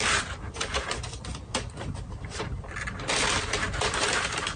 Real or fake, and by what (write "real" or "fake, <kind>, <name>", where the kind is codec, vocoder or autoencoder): real